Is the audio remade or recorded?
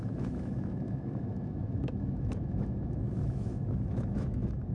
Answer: remade